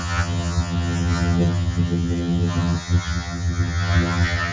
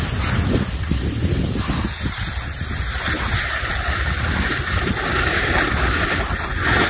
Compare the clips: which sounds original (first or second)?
second